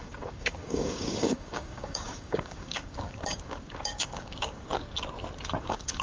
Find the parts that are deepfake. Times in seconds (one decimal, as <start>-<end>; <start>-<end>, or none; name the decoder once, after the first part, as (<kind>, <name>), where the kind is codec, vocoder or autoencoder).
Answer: 0.0-4.7 (codec, DAC); 5.6-6.0